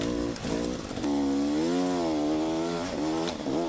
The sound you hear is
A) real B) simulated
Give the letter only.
A